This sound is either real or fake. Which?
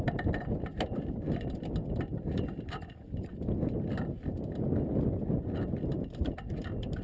real